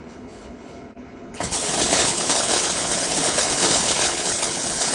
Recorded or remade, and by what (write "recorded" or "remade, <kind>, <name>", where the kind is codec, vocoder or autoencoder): remade, codec, HILCodec